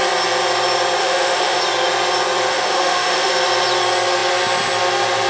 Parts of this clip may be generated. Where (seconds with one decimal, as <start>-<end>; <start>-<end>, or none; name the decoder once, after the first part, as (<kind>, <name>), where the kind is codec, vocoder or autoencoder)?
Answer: 1.0-1.6 (autoencoder, DAC-VAE); 2.5-3.3